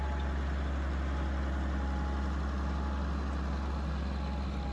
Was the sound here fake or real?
real